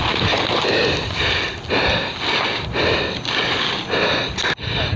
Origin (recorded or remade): recorded